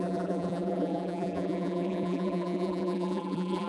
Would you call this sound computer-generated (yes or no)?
yes